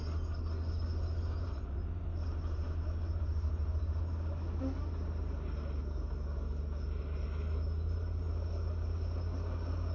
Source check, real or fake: real